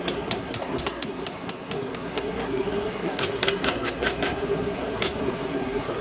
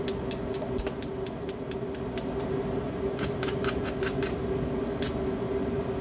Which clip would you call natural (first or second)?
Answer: second